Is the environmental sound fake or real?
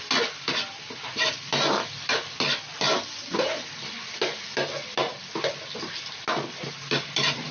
real